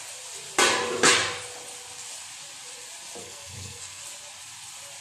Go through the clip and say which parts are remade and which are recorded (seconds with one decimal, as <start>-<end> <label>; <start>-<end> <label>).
0.0-3.2 recorded; 3.2-4.0 remade; 4.0-5.0 recorded